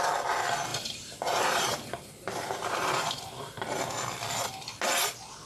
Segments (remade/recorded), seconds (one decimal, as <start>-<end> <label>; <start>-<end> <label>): 0.0-0.7 recorded; 0.7-3.9 remade; 3.9-5.5 recorded